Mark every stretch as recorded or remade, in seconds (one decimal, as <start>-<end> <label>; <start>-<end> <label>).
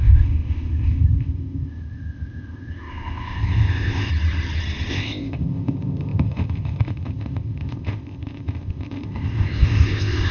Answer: 0.0-4.1 remade; 4.1-4.9 recorded; 4.9-10.3 remade